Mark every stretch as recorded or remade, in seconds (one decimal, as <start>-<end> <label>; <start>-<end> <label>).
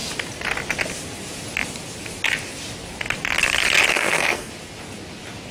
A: 0.0-3.9 recorded; 3.9-4.5 remade; 4.5-5.5 recorded